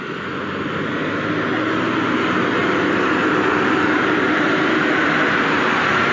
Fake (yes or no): no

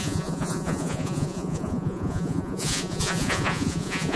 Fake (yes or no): yes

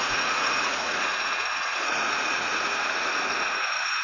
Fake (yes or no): yes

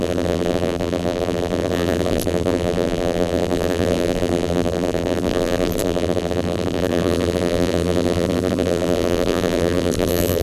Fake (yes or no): yes